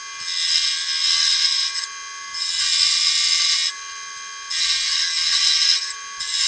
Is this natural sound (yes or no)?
yes